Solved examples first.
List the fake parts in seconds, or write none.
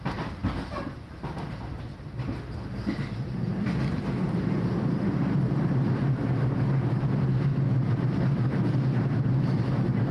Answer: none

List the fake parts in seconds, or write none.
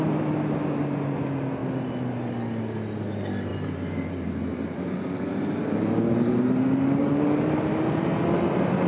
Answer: 3.5-6.4 (vocoder, BigVGAN v2); 7.0-7.7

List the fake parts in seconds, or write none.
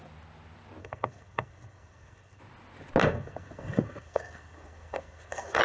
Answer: 0.8-2.4 (codec, SNAC); 3.0-5.6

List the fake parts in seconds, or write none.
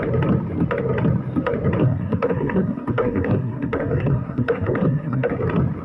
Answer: 1.8-5.3 (codec, SNAC)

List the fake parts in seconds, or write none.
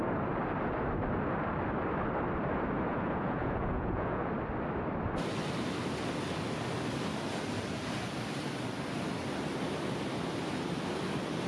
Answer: 2.9-4.3 (vocoder, Vocos)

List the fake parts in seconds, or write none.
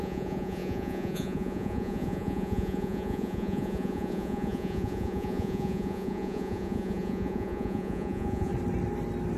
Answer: 0.0-8.5 (vocoder, Vocos)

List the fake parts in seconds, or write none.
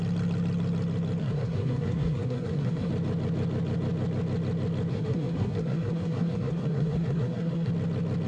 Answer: 1.2-2.9 (codec, SNAC); 4.9-7.7